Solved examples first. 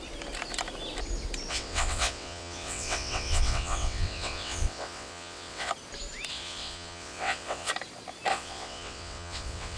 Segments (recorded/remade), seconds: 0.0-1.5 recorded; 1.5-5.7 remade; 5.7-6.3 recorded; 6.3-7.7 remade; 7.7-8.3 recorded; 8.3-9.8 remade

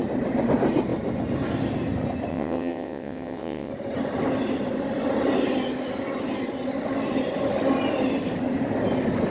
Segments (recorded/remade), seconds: 0.0-2.3 recorded; 2.3-3.7 remade; 3.7-9.3 recorded

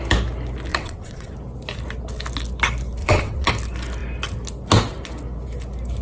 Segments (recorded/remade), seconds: 0.0-0.7 recorded; 0.7-1.3 remade; 1.3-3.0 recorded; 3.0-3.5 remade; 3.5-6.0 recorded

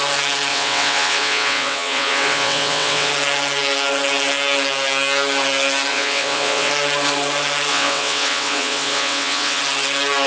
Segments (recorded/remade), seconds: 0.0-0.5 recorded; 0.5-3.1 remade; 3.1-5.9 recorded; 5.9-6.7 remade; 6.7-7.7 recorded; 7.7-9.6 remade; 9.6-10.3 recorded

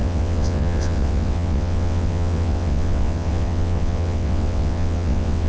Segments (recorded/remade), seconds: 0.0-5.5 remade

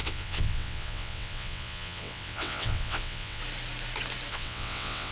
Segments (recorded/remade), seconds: 0.0-3.4 remade; 3.4-4.3 recorded; 4.3-5.1 remade